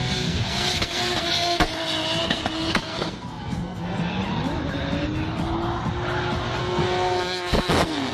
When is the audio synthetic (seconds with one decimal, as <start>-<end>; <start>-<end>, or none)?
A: 0.0-1.7; 2.2-4.2; 6.6-8.1